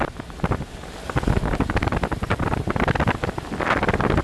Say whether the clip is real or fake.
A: real